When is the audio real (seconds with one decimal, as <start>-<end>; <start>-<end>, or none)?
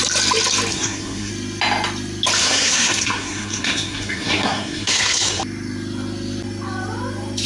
0.0-0.7; 1.3-2.4; 5.4-7.5